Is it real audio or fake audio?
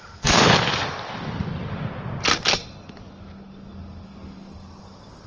real